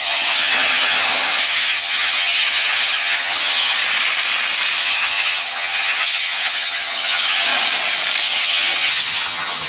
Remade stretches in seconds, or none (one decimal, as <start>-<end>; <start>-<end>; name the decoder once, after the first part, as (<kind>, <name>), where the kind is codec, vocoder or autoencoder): 0.0-3.8 (vocoder, HiFi-GAN); 4.8-7.5; 8.2-9.7